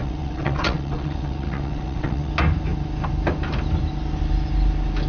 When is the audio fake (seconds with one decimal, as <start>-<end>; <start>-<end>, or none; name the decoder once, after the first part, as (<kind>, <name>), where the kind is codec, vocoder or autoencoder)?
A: 0.0-2.3 (vocoder, WaveNeXt)